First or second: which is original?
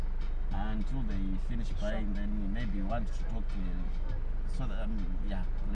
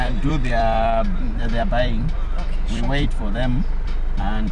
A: first